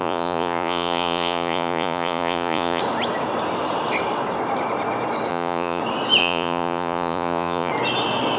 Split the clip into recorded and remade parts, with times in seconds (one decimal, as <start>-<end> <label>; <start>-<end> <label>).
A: 0.0-2.8 remade; 2.8-5.3 recorded; 5.3-5.8 remade; 5.8-6.2 recorded; 6.2-7.7 remade; 7.7-8.4 recorded